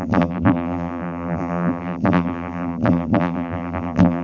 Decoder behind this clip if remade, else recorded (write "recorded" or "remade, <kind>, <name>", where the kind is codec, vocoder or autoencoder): remade, vocoder, BigVGAN v2